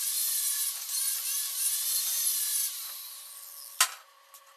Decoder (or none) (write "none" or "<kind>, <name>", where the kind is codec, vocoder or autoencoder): none